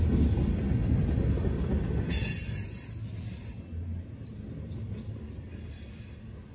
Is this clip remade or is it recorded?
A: recorded